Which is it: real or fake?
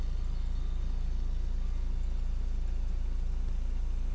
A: real